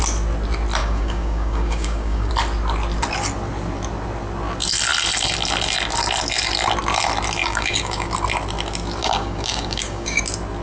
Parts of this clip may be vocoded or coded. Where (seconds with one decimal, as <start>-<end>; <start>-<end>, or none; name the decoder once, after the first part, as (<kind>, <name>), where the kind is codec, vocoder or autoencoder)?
0.8-2.3 (codec, DAC); 7.4-8.1; 9.0-10.2